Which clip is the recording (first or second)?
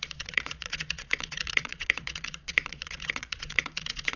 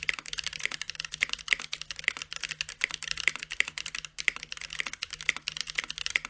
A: second